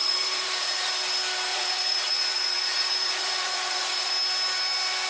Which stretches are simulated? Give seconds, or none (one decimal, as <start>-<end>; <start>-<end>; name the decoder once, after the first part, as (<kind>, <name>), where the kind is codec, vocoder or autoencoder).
0.0-0.9 (vocoder, Vocos); 1.5-4.1